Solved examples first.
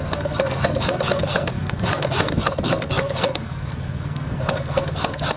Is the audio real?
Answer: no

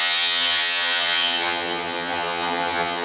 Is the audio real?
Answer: no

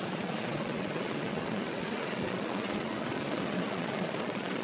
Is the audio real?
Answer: no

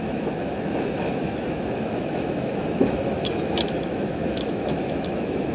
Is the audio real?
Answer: no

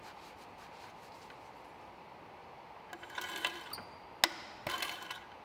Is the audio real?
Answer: yes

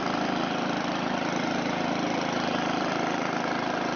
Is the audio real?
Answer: yes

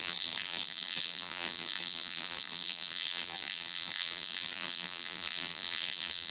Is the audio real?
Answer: no